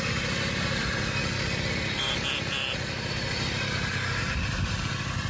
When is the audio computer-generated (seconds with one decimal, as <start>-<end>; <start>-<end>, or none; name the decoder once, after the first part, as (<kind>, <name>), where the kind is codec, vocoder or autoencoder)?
none